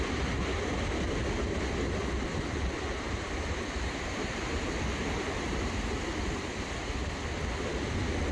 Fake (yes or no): no